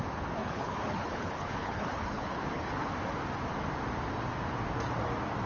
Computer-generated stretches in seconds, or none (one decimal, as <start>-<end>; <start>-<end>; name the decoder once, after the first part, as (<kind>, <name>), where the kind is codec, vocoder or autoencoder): 0.4-2.9 (codec, HILCodec)